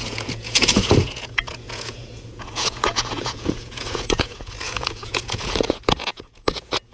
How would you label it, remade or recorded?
remade